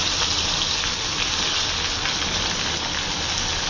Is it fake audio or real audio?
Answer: real